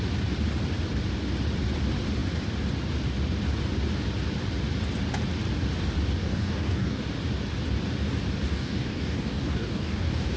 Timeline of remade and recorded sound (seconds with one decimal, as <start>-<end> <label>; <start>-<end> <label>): 0.0-6.2 recorded; 6.2-7.0 remade; 7.0-8.5 recorded; 8.5-10.4 remade